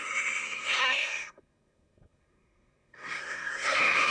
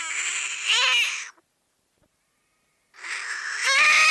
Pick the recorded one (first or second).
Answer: second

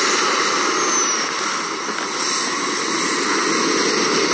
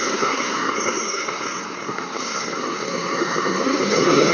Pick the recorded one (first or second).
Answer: first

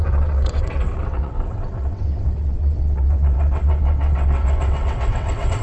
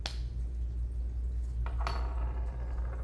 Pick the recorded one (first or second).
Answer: second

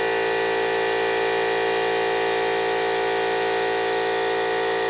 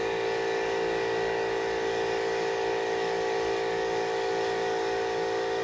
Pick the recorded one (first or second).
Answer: first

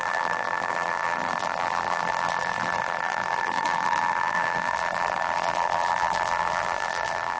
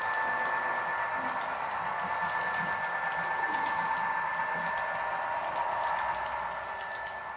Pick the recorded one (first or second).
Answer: second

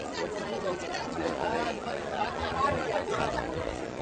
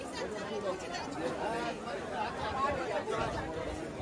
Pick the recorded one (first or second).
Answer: second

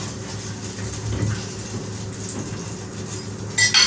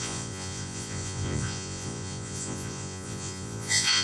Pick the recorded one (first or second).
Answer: first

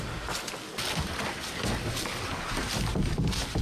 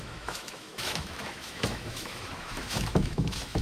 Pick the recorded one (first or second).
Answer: first